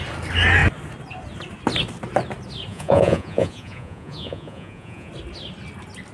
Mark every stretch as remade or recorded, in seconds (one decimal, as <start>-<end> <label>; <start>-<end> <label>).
0.0-2.7 recorded; 2.7-5.1 remade; 5.1-6.1 recorded